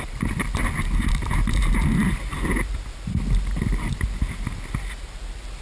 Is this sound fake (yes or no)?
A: no